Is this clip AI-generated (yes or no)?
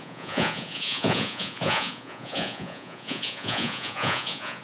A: yes